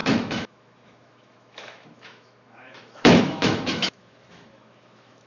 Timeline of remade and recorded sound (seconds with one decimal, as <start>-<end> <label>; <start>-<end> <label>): 0.0-5.3 remade